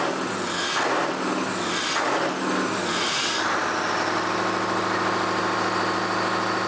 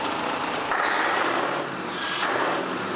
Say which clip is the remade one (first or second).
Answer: second